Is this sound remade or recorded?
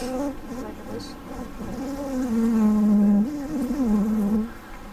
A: recorded